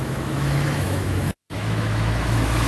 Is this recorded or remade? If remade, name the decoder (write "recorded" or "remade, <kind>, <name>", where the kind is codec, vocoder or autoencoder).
remade, autoencoder, DAC-VAE